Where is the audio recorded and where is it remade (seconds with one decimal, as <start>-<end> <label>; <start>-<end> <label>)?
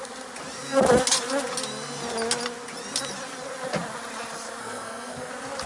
0.0-4.6 recorded; 4.6-5.3 remade; 5.3-5.7 recorded